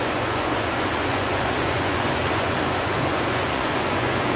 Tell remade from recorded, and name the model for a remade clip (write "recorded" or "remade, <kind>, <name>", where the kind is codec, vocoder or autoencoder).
remade, vocoder, Vocos